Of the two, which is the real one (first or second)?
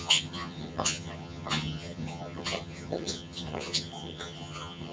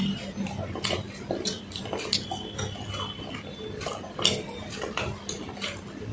second